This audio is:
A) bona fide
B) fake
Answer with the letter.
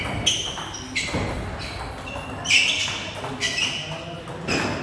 A